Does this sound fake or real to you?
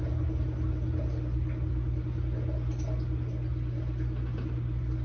real